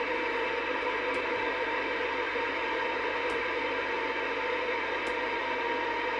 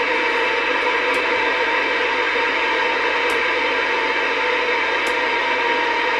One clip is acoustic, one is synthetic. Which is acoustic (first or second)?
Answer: second